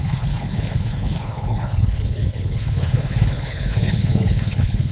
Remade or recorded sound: remade